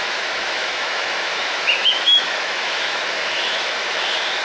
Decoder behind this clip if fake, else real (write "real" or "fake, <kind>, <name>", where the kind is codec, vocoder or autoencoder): fake, autoencoder, DAC-VAE